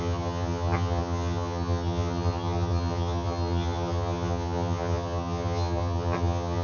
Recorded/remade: remade